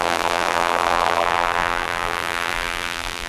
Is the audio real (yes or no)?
no